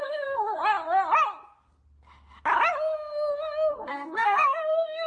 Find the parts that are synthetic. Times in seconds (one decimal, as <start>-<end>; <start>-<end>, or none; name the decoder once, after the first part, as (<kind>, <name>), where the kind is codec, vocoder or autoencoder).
0.0-0.6 (codec, SNAC); 3.7-5.1

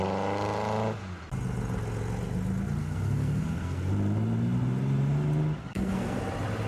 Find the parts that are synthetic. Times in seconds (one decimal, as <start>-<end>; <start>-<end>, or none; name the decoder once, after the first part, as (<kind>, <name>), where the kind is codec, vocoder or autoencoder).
2.8-3.9 (codec, SNAC); 5.6-6.2

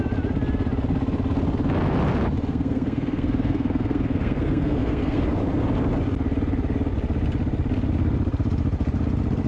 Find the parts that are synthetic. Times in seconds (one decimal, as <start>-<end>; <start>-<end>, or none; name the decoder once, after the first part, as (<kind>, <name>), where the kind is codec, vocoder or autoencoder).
2.5-5.2 (codec, SNAC)

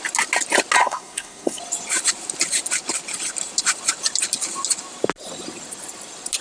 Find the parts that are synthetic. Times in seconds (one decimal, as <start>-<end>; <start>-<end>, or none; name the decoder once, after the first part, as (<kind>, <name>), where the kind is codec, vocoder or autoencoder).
0.8-1.6 (codec, SNAC)

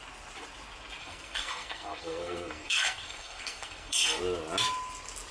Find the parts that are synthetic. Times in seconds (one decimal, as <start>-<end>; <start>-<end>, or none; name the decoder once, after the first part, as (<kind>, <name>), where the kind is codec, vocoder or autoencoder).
1.0-4.2 (codec, SNAC)

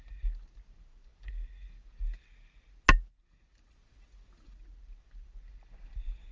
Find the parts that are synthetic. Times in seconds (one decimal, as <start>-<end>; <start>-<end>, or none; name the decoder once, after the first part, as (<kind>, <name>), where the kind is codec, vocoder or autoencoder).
none

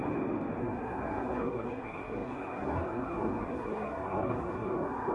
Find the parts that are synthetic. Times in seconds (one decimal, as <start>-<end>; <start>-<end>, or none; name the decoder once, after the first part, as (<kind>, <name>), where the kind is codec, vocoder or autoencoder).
0.6-5.1 (codec, SNAC)

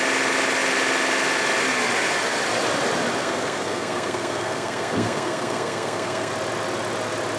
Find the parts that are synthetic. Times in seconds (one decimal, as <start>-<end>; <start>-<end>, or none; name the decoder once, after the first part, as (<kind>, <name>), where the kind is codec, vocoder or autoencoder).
3.2-6.3 (codec, SNAC)